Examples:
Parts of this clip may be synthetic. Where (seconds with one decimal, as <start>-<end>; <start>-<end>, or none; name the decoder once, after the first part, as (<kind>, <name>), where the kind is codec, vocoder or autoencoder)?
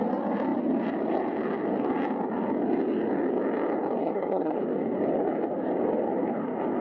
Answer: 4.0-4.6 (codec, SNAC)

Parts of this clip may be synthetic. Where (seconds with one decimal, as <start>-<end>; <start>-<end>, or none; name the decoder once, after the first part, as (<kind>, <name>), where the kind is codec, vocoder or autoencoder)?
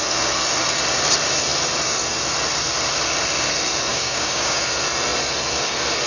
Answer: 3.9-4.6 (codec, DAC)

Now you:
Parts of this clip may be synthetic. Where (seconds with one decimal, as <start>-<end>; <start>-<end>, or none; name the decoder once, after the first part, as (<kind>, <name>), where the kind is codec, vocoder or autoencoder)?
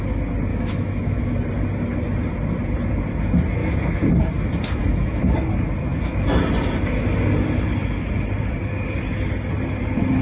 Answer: 0.5-1.3 (autoencoder, DAC-VAE); 3.6-4.1; 4.8-5.3; 5.9-6.4